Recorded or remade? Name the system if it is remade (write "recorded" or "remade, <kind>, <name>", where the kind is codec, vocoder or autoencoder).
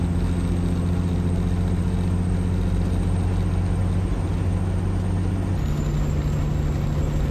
recorded